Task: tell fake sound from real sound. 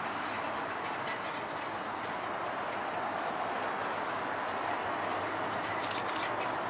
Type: real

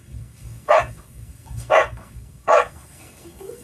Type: fake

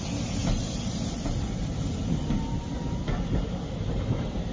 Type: real